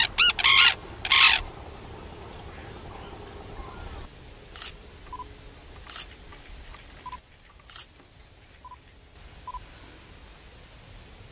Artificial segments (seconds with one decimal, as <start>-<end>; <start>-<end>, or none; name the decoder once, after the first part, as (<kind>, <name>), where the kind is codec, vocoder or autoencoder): none